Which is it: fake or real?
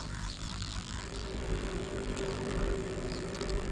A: fake